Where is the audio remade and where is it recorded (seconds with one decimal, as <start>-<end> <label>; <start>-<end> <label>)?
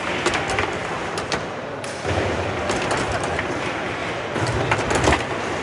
0.0-0.8 recorded; 0.8-3.6 remade; 3.6-4.0 recorded; 4.0-4.9 remade; 4.9-5.6 recorded